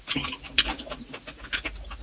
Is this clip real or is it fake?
real